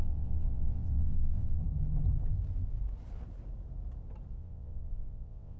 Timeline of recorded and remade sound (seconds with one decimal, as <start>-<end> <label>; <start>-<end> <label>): 0.0-1.6 remade; 1.6-4.3 recorded; 4.3-5.6 remade